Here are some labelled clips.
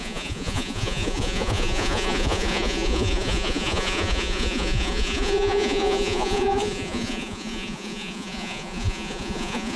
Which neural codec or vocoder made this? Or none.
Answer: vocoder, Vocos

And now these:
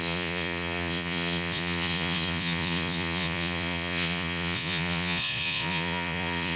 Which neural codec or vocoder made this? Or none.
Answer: vocoder, Vocos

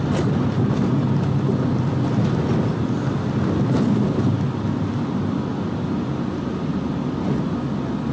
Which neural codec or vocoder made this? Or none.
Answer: none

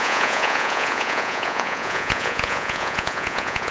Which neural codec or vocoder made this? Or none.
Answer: vocoder, Vocos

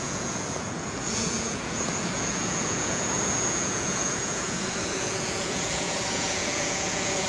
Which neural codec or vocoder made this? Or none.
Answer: vocoder, Vocos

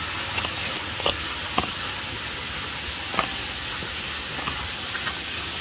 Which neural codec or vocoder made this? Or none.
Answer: none